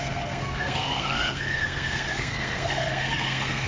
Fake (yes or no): yes